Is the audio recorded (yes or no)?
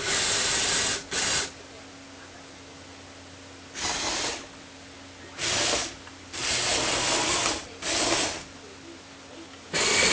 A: yes